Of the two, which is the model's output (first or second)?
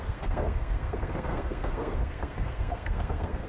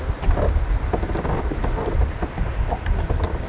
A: first